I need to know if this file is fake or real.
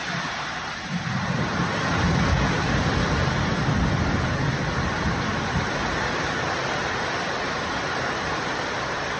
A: real